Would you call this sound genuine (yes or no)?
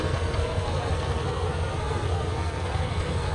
no